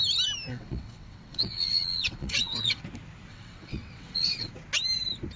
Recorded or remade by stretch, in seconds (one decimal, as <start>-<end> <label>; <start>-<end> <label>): 0.0-0.5 recorded; 0.5-2.8 remade; 2.8-3.3 recorded; 3.3-4.5 remade; 4.5-5.4 recorded